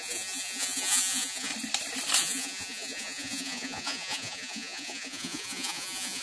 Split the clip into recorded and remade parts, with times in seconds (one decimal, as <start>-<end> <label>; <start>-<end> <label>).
0.0-1.5 remade; 1.5-2.2 recorded; 2.2-6.2 remade